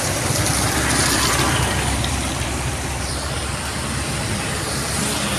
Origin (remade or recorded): remade